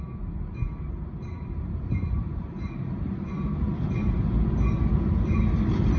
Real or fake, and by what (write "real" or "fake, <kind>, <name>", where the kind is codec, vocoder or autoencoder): real